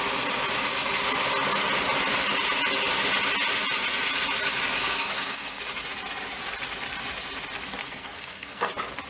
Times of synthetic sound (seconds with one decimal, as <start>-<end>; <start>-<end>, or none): 4.8-5.6; 7.8-8.7